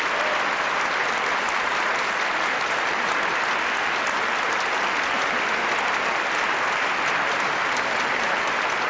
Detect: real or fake real